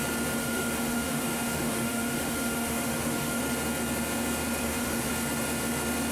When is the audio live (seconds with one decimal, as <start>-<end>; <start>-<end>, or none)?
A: 0.0-0.4; 3.4-4.6; 5.1-6.1